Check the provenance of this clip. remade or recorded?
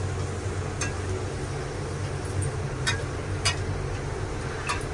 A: recorded